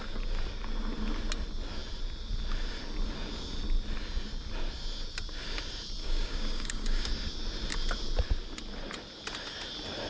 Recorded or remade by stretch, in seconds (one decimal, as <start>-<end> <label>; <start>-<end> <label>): 0.0-6.0 recorded; 6.0-7.1 remade; 7.1-10.1 recorded